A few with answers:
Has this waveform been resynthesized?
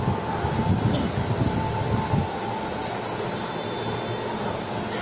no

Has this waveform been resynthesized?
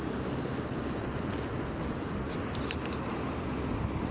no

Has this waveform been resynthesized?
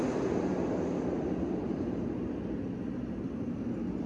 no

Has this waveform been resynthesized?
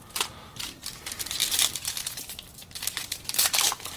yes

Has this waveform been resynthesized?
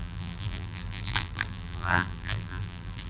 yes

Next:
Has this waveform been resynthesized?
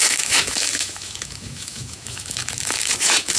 yes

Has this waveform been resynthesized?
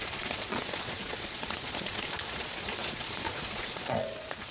yes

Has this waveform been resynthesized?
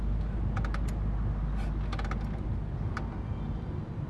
no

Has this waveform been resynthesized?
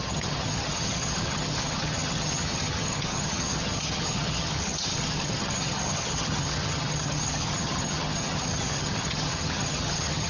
yes